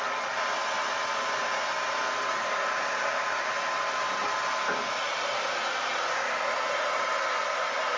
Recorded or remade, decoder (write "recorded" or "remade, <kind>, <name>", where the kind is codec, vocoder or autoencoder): recorded